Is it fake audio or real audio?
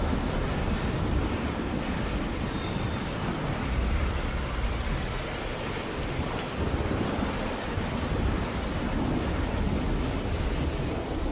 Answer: real